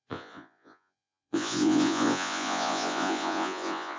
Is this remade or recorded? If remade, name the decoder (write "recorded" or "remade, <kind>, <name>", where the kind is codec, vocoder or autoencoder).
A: remade, vocoder, Vocos